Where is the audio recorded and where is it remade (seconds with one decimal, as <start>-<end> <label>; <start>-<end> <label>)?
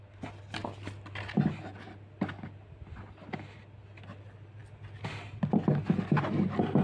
0.0-0.6 recorded; 0.6-1.5 remade; 1.5-6.8 recorded